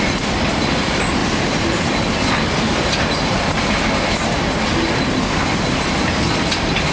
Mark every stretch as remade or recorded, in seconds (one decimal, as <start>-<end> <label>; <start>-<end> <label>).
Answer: 0.0-1.2 recorded; 1.2-1.9 remade; 1.9-6.9 recorded